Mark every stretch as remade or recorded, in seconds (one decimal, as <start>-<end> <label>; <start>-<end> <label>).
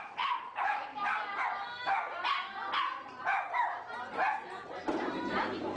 0.0-0.9 remade; 0.9-2.8 recorded; 2.8-5.8 remade